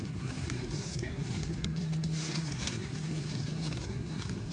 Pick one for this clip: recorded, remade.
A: remade